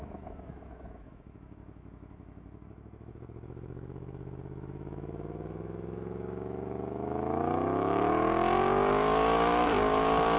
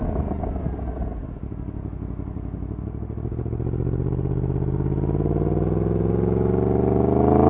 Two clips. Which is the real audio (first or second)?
second